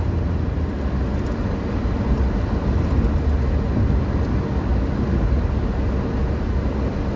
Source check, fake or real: real